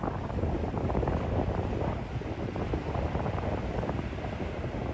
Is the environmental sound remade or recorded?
recorded